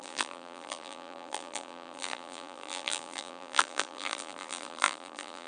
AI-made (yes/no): yes